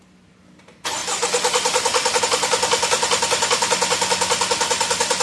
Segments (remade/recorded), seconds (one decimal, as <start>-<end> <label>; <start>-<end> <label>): 0.0-5.2 recorded